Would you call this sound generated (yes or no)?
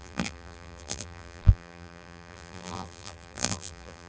yes